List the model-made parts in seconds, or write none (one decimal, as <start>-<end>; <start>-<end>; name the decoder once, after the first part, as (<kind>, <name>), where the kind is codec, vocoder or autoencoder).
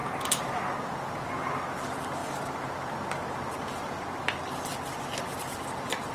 none